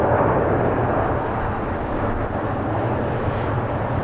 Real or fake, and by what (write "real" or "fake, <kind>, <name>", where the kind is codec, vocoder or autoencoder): real